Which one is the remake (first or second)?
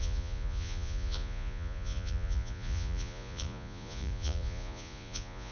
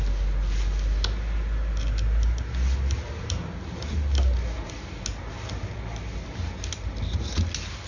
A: first